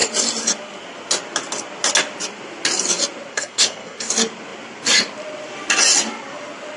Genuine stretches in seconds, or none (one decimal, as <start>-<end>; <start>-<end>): 0.0-3.3; 4.1-6.8